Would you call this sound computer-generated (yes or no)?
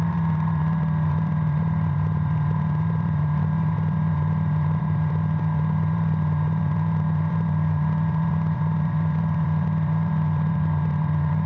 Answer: yes